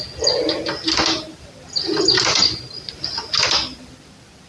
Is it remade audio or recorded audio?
recorded